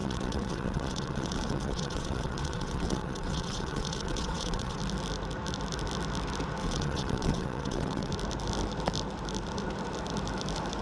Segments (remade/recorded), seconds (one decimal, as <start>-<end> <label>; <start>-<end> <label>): 0.0-4.8 remade; 4.8-6.6 recorded; 6.6-8.1 remade; 8.1-10.8 recorded